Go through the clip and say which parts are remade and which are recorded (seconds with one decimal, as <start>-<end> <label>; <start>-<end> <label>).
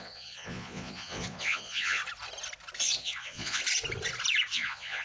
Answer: 0.0-2.0 remade; 2.0-3.0 recorded; 3.0-3.6 remade; 3.6-4.5 recorded; 4.5-5.0 remade